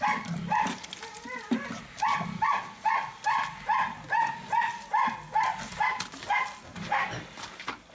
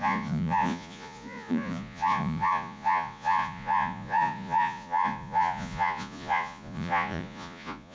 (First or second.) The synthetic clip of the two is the second